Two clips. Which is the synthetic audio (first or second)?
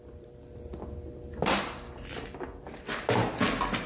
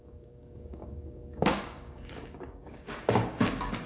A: second